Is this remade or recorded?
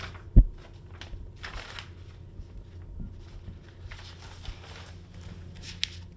recorded